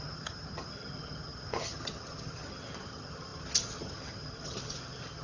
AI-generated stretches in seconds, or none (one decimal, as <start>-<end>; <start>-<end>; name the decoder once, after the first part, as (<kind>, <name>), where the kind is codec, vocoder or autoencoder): 0.0-5.2 (vocoder, HiFi-GAN)